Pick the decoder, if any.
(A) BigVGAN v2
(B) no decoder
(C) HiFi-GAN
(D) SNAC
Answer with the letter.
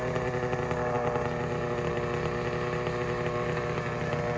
B